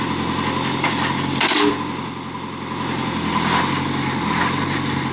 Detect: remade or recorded recorded